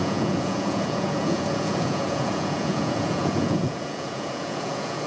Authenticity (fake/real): fake